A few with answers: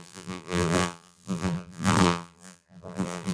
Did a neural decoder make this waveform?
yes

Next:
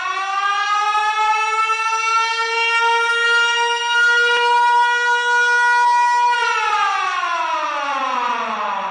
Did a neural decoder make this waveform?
no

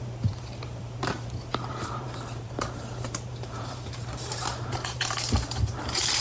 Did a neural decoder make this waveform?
yes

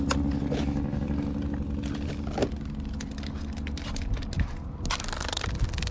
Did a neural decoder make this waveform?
no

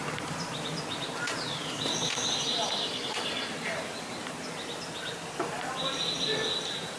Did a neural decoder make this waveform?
no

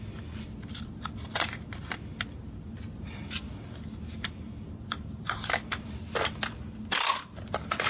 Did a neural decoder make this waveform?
no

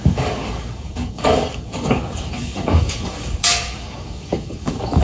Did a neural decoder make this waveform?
yes